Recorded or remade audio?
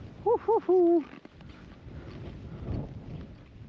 recorded